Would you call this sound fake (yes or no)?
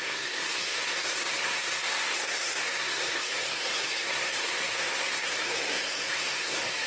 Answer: yes